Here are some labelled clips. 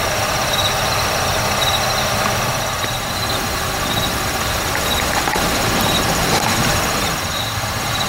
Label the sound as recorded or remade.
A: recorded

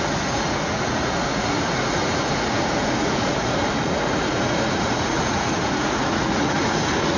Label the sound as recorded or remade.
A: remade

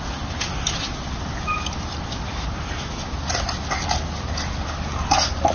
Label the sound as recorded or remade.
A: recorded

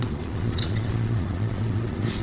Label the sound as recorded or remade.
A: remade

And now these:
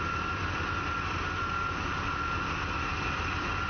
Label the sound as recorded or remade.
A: recorded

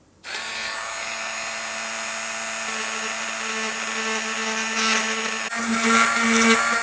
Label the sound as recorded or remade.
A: recorded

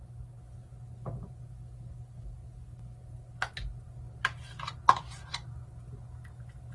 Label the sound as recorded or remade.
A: recorded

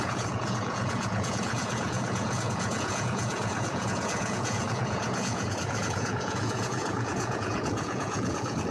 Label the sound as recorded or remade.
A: remade